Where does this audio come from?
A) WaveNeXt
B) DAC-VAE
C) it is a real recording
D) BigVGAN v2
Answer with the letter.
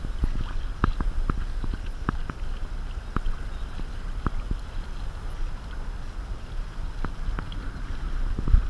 C